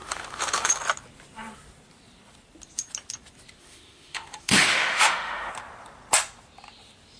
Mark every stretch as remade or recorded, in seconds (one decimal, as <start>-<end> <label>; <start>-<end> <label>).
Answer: 0.0-0.7 remade; 0.7-3.6 recorded; 3.6-5.5 remade; 5.5-7.2 recorded